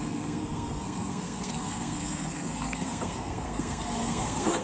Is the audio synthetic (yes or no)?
yes